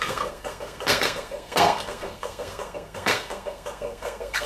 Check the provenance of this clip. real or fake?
fake